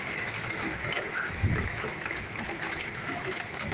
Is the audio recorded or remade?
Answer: remade